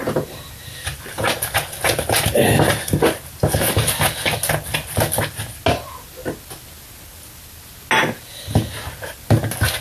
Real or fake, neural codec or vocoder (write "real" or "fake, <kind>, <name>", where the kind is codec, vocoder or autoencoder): real